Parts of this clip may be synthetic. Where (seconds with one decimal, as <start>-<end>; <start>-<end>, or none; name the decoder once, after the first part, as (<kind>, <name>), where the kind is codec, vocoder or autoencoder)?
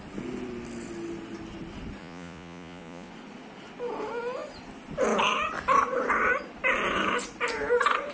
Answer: 2.0-3.1 (vocoder, Vocos)